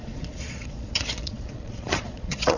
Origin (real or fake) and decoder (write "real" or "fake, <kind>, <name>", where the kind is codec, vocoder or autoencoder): fake, vocoder, Vocos